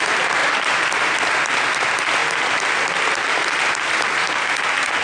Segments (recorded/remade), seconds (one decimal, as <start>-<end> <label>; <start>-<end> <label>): 0.0-0.4 recorded; 0.4-1.8 remade; 1.8-5.0 recorded